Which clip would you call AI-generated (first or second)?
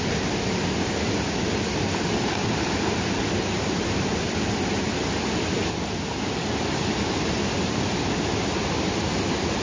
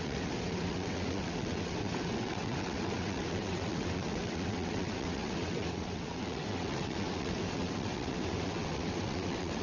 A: second